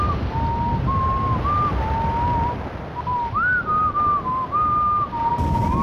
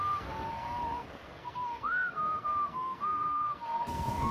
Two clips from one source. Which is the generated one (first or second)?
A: second